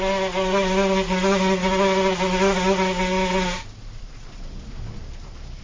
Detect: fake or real real